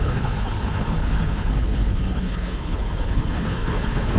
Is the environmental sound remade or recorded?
remade